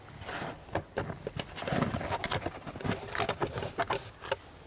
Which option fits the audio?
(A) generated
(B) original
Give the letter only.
B